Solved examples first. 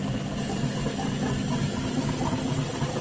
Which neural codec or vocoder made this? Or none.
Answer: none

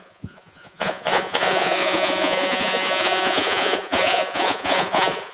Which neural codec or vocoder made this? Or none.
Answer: vocoder, Vocos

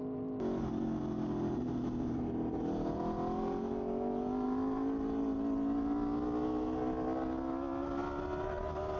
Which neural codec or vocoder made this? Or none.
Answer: none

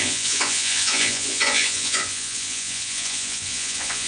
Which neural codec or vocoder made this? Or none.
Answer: vocoder, Vocos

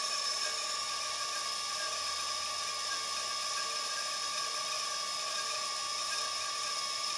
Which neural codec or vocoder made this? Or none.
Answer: none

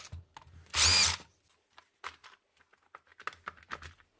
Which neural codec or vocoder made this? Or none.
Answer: none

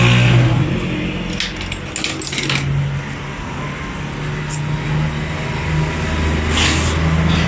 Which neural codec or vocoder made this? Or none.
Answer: none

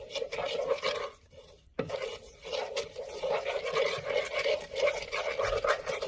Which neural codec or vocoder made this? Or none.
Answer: none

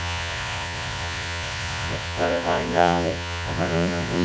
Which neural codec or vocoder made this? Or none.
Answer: vocoder, Vocos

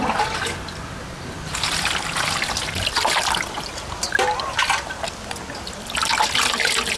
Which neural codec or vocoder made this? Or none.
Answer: none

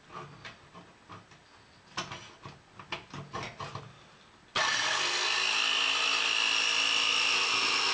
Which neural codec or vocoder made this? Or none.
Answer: none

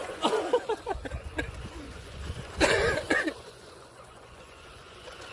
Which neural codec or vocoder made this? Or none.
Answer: vocoder, Vocos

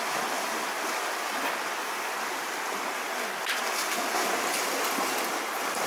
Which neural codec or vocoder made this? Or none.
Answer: none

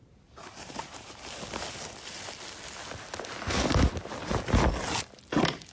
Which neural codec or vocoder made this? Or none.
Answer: none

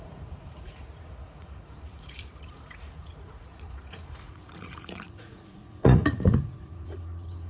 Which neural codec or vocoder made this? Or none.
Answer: vocoder, Vocos